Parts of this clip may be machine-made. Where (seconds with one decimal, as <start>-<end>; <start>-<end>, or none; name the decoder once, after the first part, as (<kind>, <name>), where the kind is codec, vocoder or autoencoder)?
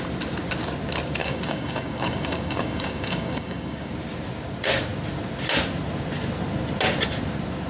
1.2-3.9 (codec, DAC)